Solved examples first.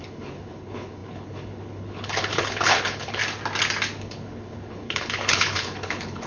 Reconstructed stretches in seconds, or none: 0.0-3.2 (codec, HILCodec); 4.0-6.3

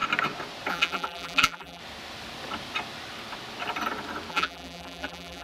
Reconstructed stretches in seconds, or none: 0.7-1.8 (vocoder, BigVGAN v2); 4.3-5.4

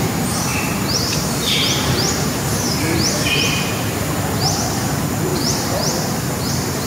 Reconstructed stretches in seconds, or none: 0.0-6.9 (vocoder, BigVGAN v2)